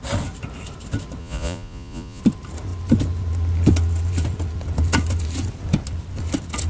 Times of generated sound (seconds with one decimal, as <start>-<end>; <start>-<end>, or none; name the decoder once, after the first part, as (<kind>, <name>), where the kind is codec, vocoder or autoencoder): 1.2-2.2 (vocoder, Vocos)